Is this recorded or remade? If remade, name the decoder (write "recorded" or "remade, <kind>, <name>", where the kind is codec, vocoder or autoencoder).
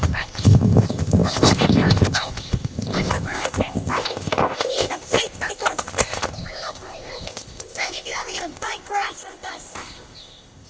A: remade, codec, ZipCodec